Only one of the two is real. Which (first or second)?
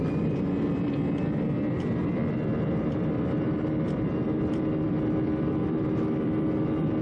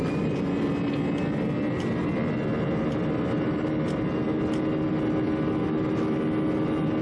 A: second